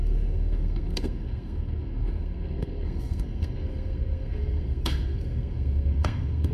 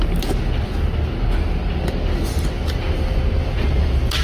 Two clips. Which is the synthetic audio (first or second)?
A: first